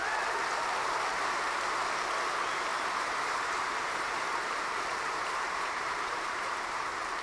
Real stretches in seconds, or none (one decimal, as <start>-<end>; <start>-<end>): 0.0-2.7